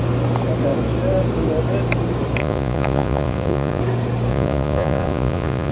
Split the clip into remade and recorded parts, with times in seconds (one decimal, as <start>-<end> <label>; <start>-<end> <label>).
0.0-2.4 recorded; 2.4-3.8 remade; 3.8-4.3 recorded; 4.3-5.7 remade